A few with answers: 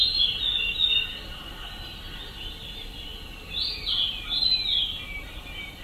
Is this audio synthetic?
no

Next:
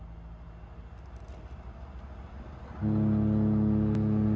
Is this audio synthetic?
no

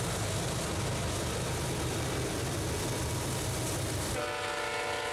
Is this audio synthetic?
no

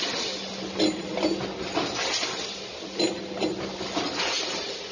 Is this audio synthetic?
no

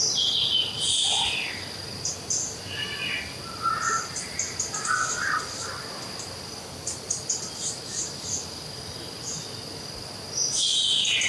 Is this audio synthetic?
no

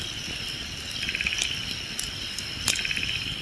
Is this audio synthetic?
no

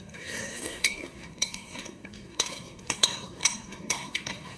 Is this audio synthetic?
yes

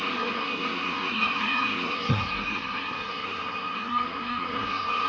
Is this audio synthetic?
yes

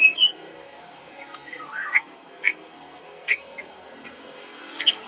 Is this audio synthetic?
yes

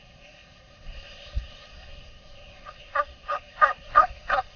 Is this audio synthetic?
yes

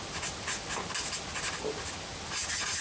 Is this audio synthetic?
no